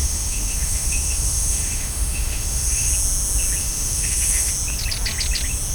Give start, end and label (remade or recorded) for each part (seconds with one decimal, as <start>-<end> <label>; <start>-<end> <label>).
0.0-2.9 remade; 2.9-3.6 recorded; 3.6-4.5 remade; 4.5-5.7 recorded